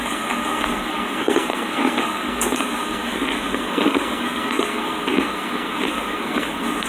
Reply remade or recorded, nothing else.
remade